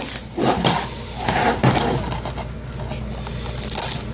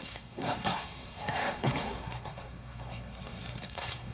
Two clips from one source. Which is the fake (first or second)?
second